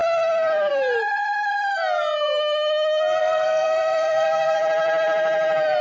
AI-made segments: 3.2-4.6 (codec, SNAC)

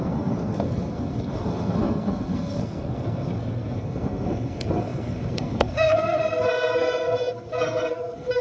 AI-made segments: 0.0-8.4 (codec, SNAC)

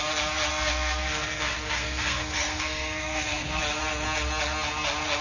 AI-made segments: 0.5-3.6 (codec, SNAC)